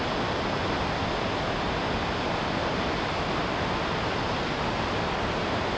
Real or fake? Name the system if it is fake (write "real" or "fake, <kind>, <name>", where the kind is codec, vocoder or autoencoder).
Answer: real